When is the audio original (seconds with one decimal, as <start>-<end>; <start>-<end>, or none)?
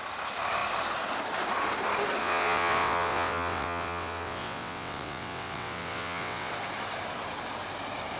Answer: 0.0-2.2; 6.5-8.2